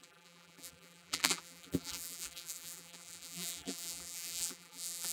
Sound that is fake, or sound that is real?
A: fake